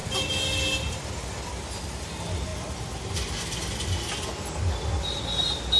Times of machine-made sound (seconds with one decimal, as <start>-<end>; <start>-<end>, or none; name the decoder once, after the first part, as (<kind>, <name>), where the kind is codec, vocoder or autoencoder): none